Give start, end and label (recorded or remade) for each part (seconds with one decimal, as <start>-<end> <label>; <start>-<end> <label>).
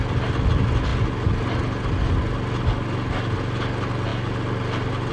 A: 0.0-5.1 recorded